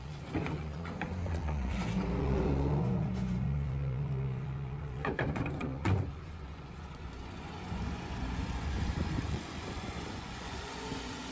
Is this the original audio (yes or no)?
no